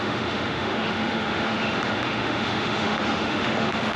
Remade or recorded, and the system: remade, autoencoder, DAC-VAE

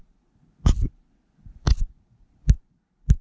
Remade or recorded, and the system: recorded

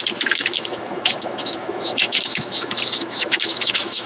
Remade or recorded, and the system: remade, autoencoder, DAC-VAE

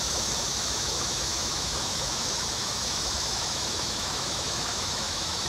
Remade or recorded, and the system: remade, autoencoder, DAC-VAE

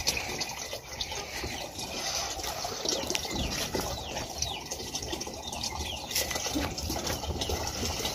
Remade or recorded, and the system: recorded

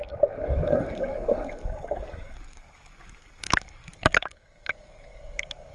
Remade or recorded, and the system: remade, codec, DAC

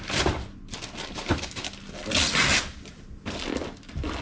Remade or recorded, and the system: recorded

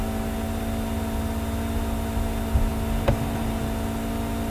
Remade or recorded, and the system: recorded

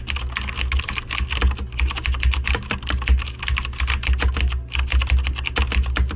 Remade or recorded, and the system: recorded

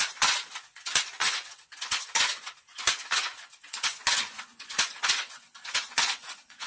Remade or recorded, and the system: remade, vocoder, Vocos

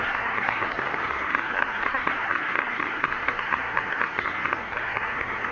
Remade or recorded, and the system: remade, codec, SNAC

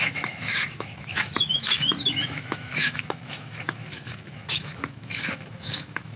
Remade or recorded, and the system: remade, autoencoder, DAC-VAE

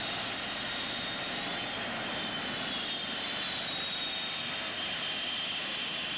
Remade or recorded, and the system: recorded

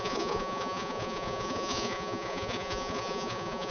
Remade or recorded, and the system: remade, vocoder, Vocos